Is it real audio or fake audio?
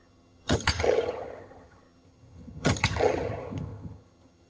fake